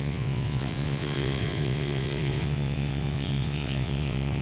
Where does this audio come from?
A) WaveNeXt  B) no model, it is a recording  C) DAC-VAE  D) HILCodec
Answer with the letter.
A